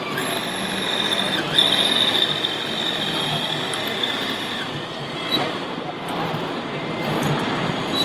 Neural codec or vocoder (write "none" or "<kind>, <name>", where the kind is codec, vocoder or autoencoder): none